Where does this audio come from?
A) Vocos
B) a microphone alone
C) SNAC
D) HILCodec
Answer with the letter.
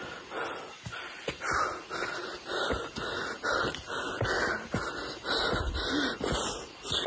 B